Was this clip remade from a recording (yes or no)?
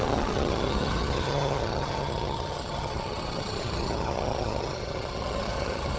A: yes